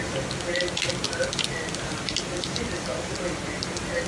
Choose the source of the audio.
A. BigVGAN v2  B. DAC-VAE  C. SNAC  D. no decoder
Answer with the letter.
D